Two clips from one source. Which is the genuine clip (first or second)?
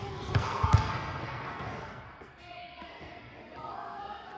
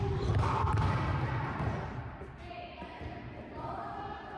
second